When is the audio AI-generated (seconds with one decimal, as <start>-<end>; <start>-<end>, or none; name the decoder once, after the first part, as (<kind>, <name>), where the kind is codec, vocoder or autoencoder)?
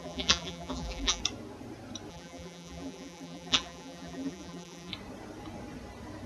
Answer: 0.0-1.2 (vocoder, BigVGAN v2); 2.1-4.9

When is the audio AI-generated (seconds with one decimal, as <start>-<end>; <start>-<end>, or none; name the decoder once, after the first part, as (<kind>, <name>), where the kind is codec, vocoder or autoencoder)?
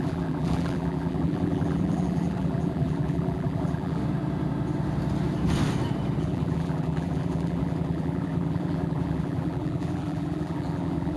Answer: 0.0-4.0 (vocoder, BigVGAN v2); 6.2-11.2